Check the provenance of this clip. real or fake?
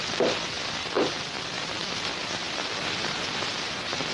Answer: fake